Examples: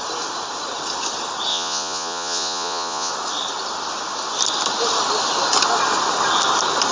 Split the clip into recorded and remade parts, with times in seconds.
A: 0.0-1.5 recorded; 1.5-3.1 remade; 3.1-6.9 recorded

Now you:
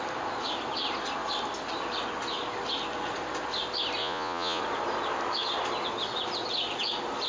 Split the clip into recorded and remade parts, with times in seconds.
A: 0.0-4.0 recorded; 4.0-4.6 remade; 4.6-7.3 recorded

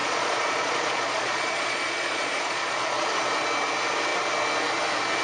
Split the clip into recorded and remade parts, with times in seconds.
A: 0.0-3.1 remade; 3.1-5.2 recorded

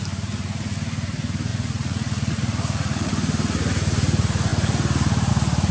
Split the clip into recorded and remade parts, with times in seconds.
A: 0.0-1.5 recorded; 1.5-3.1 remade; 3.1-5.7 recorded

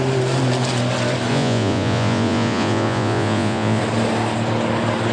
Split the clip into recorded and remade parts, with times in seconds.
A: 0.0-1.3 recorded; 1.3-3.8 remade; 3.8-5.1 recorded

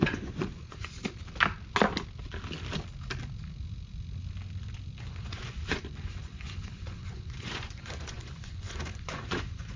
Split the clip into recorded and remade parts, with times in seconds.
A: 0.0-1.0 remade; 1.0-5.0 recorded; 5.0-9.8 remade

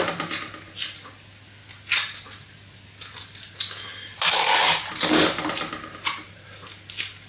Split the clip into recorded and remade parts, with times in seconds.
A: 0.0-7.3 recorded

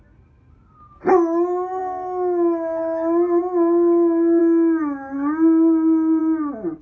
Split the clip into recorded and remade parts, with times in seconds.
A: 0.0-6.8 recorded